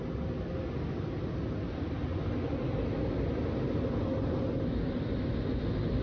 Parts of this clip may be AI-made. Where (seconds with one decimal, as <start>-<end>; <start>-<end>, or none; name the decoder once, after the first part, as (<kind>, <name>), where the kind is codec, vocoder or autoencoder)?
none